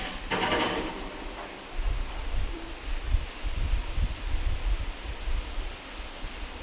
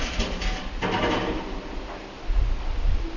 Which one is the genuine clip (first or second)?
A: second